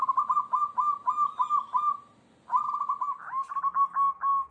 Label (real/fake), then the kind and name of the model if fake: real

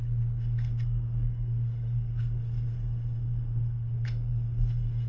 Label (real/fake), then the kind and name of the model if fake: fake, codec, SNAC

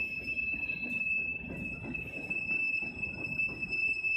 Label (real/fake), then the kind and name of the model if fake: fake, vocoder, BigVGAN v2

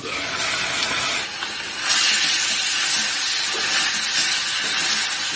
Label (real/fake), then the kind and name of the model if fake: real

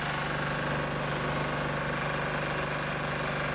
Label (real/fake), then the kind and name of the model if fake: real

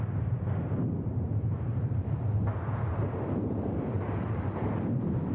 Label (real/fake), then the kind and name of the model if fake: fake, vocoder, BigVGAN v2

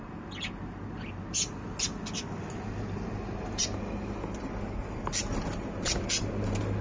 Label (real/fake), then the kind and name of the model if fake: real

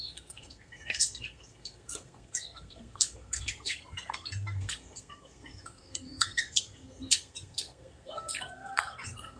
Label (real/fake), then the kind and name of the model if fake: fake, codec, SNAC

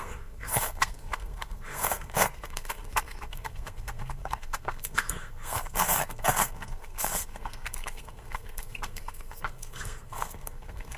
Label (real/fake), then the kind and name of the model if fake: fake, codec, SNAC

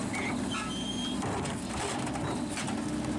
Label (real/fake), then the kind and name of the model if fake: real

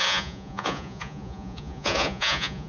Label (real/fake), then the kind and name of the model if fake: fake, vocoder, Vocos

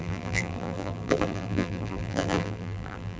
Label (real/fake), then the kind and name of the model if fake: fake, vocoder, BigVGAN v2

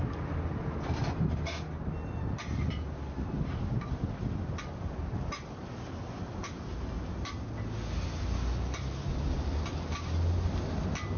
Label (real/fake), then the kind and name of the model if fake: real